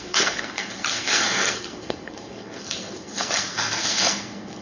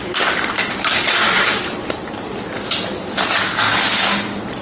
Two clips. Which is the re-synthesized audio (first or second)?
first